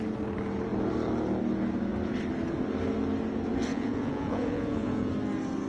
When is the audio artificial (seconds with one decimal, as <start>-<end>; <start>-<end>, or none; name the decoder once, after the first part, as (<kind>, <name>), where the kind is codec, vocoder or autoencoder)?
3.7-5.1 (vocoder, Vocos)